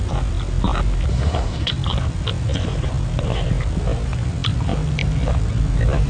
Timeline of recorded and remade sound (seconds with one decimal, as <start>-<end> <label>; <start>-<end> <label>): 0.0-1.1 recorded; 1.1-1.7 remade; 1.7-6.1 recorded